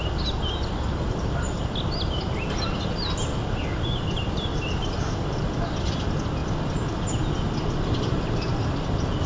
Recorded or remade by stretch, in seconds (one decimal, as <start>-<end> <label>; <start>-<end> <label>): 0.0-4.5 recorded; 4.5-5.1 remade; 5.1-9.3 recorded